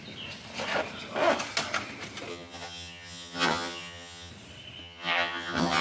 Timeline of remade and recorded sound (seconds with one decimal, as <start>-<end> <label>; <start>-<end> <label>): 0.0-2.3 recorded; 2.3-4.3 remade; 4.3-4.8 recorded; 4.8-5.8 remade